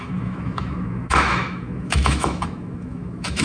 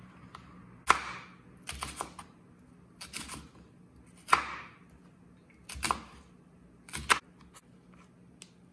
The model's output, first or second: first